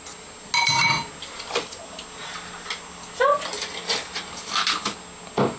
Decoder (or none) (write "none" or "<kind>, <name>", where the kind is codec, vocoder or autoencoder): none